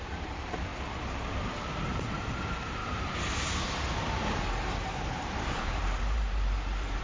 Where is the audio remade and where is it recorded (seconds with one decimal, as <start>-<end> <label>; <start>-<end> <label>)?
0.0-7.0 remade